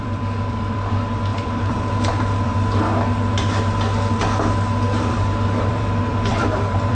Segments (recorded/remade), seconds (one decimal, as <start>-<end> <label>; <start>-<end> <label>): 0.0-2.5 remade; 2.5-5.1 recorded; 5.1-6.9 remade